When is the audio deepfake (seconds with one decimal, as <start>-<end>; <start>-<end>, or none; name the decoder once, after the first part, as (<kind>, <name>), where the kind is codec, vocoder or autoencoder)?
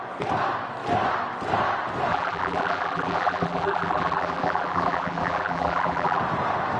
2.1-6.2 (vocoder, BigVGAN v2)